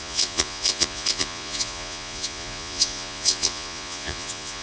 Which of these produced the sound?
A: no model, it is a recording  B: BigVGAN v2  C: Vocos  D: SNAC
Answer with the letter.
C